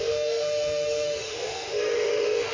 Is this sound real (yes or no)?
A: no